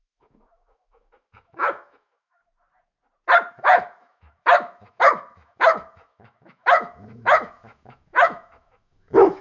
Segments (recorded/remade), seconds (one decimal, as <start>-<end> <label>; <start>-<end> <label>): 0.0-2.4 remade; 2.4-3.5 recorded; 3.5-9.4 remade